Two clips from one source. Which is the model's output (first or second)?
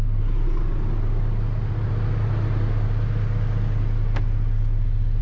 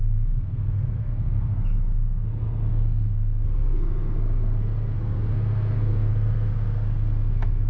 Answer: second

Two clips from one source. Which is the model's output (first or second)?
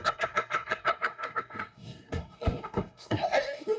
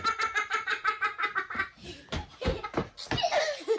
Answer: first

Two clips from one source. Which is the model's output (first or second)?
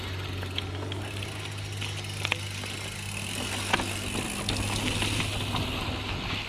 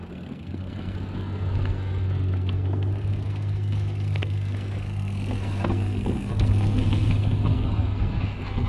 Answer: second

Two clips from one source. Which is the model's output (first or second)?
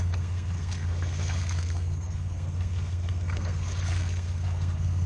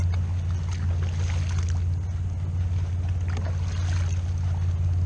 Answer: first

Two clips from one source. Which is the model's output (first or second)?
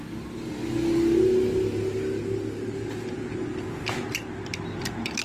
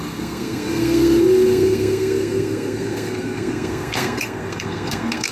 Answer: second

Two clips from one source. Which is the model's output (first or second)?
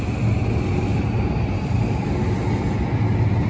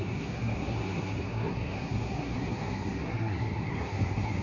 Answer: second